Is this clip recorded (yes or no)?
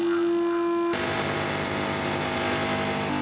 yes